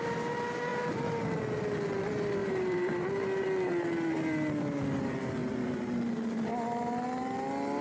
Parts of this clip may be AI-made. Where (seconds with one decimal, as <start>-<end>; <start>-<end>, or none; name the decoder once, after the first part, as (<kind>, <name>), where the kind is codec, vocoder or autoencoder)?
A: 2.4-2.9 (vocoder, BigVGAN v2); 5.4-6.0